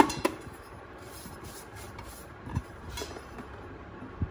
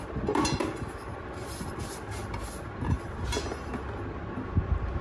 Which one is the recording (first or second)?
second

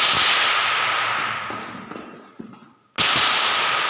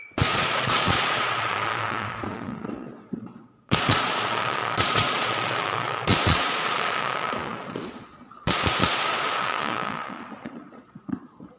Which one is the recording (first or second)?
first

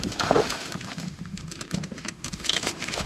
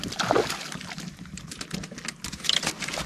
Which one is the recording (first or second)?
second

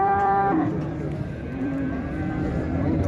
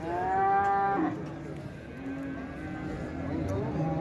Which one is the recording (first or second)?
second